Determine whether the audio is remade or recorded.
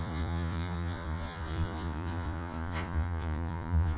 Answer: remade